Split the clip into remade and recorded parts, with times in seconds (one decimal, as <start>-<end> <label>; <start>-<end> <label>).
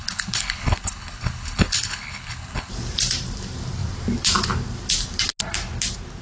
0.0-2.7 remade; 2.7-6.2 recorded